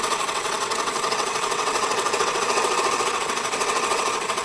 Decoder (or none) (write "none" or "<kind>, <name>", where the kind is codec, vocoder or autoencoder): vocoder, WaveNeXt